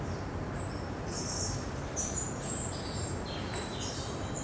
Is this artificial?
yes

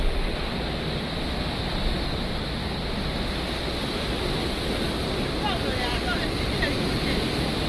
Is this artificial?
no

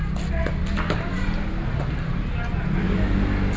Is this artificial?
no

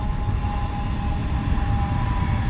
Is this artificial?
no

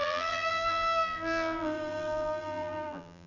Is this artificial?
yes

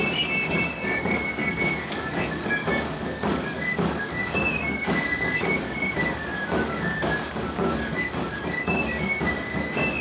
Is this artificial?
yes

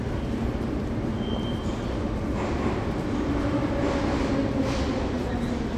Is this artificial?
no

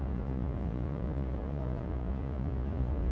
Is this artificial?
yes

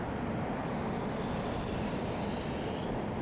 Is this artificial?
no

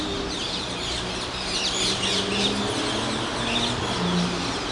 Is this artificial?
no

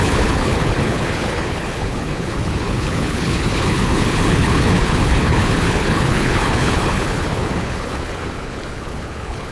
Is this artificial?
yes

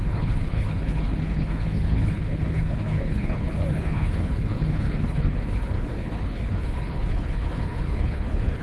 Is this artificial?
yes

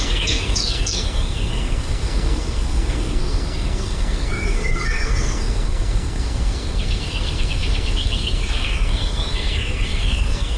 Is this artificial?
yes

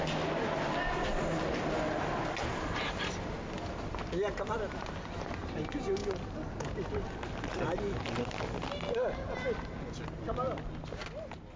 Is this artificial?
no